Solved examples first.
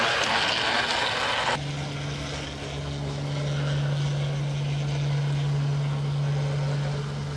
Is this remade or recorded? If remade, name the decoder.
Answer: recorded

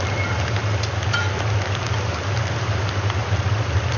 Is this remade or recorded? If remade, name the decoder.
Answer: recorded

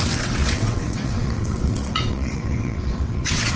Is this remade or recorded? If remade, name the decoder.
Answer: remade, vocoder, WaveNeXt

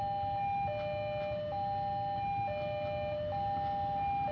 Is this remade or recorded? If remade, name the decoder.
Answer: recorded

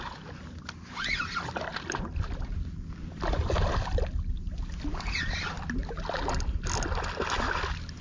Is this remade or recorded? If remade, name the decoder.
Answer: recorded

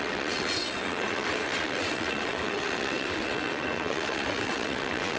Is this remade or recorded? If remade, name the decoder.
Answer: remade, vocoder, WaveNeXt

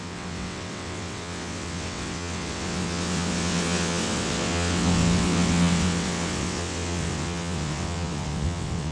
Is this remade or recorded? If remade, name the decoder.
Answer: remade, vocoder, WaveNeXt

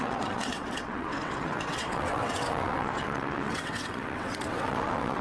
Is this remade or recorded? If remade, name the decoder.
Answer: remade, vocoder, WaveNeXt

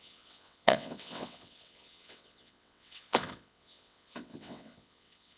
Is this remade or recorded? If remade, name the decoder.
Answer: remade, vocoder, WaveNeXt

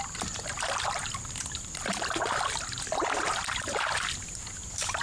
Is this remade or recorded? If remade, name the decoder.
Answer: recorded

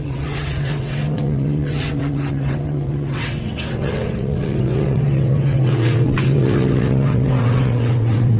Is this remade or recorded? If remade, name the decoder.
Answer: remade, vocoder, WaveNeXt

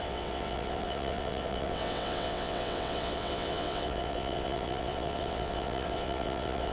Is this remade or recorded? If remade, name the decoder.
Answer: remade, vocoder, WaveNeXt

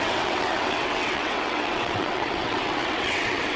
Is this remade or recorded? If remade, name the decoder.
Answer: remade, vocoder, WaveNeXt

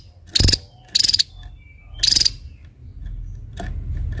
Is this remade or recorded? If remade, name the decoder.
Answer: recorded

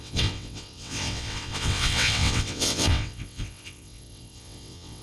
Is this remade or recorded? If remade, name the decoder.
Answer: remade, vocoder, WaveNeXt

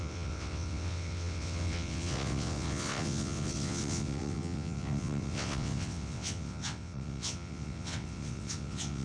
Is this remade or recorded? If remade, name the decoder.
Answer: remade, vocoder, WaveNeXt